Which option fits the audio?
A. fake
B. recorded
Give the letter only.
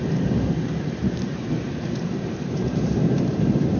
A